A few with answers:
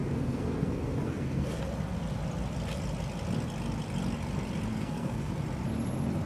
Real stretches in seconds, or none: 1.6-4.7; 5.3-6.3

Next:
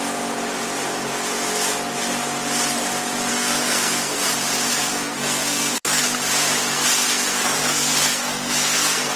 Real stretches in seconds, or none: 0.0-3.3; 4.3-4.8; 6.0-6.7

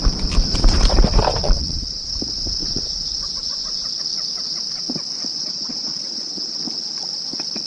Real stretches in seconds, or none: 0.0-1.4; 2.1-2.6; 3.9-5.3; 6.6-7.7

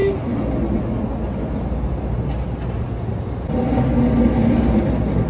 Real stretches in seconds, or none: 0.0-5.3